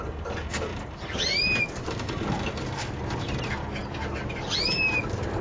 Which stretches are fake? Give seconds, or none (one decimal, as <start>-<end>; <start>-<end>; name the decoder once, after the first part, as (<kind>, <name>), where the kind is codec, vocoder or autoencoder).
3.6-4.3 (vocoder, BigVGAN v2)